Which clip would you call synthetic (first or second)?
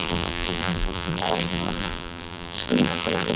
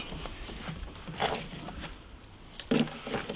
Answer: first